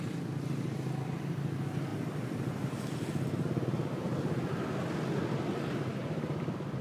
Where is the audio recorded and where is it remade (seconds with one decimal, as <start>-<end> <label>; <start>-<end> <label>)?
0.0-6.8 recorded